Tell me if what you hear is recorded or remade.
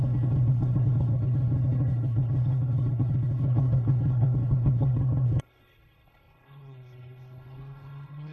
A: remade